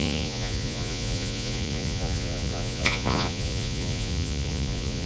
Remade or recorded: remade